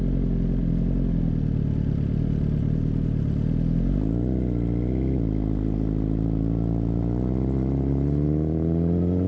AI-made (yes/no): no